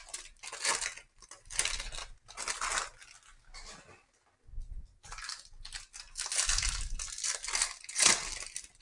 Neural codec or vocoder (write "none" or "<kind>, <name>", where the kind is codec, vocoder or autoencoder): none